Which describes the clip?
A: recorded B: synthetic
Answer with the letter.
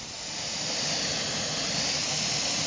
A